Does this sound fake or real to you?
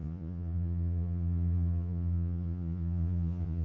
fake